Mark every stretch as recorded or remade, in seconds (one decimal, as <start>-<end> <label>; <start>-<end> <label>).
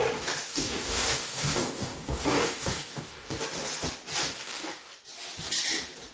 0.0-0.5 recorded; 0.5-3.4 remade; 3.4-4.2 recorded; 4.2-4.9 remade; 4.9-6.1 recorded